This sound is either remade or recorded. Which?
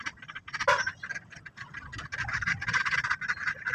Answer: recorded